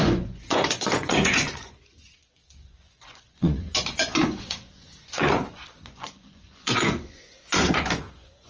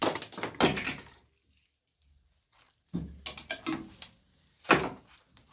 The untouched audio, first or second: second